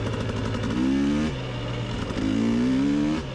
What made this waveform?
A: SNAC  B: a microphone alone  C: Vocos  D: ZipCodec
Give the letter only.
B